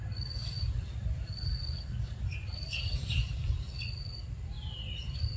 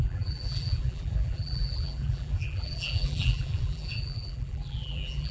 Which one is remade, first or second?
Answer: second